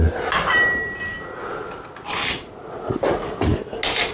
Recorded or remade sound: recorded